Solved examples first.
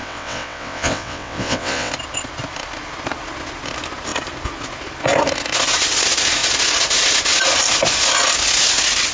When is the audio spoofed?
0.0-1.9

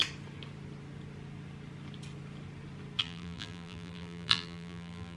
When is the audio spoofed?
3.0-5.2